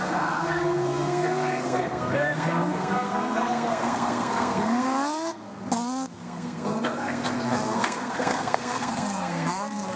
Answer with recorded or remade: remade